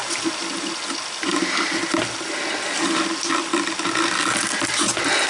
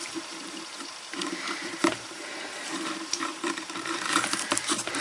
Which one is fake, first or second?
second